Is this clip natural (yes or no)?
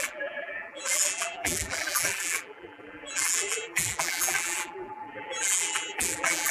no